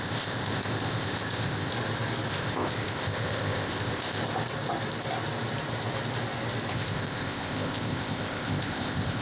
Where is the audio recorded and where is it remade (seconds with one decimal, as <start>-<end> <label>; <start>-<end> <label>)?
0.0-1.7 remade; 1.7-2.3 recorded; 2.3-4.2 remade; 4.2-6.7 recorded; 6.7-9.2 remade